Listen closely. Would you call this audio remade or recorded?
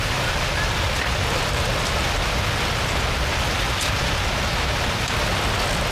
recorded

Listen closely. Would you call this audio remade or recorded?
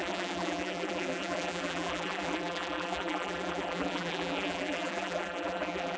remade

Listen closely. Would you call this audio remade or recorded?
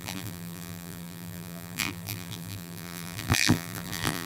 remade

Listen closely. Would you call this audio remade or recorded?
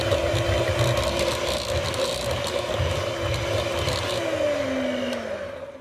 recorded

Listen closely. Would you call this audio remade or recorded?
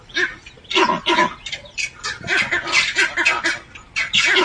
recorded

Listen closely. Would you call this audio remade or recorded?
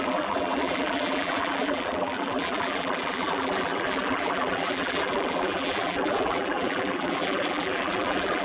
remade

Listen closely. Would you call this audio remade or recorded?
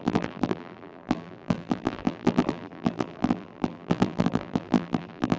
remade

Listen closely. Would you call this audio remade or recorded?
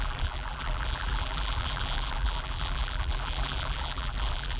remade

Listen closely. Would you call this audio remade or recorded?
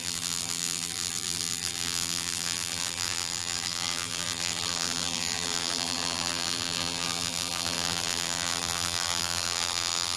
remade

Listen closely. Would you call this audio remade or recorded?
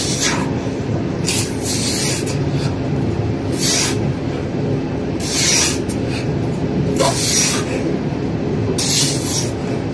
recorded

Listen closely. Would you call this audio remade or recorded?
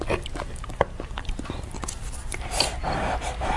remade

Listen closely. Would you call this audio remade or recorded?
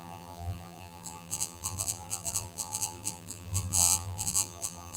remade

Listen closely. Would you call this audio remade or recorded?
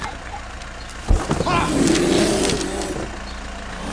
recorded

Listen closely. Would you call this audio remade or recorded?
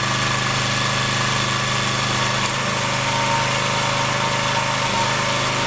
recorded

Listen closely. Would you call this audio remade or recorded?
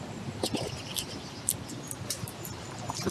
remade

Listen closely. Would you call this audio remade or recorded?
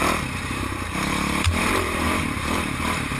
remade